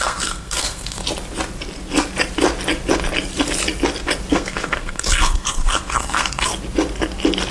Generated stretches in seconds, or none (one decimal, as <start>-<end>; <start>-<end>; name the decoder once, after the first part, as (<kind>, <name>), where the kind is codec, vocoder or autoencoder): 0.0-1.0 (codec, SNAC); 4.3-6.5